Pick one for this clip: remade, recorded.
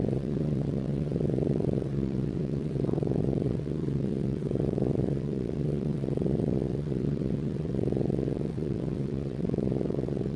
remade